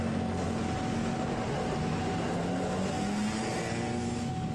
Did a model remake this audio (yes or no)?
no